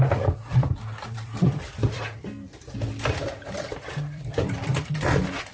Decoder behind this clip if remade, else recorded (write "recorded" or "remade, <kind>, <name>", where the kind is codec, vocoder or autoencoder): remade, vocoder, BigVGAN v2